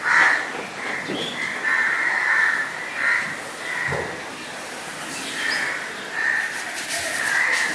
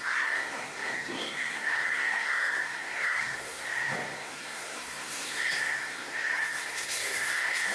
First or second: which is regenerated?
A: second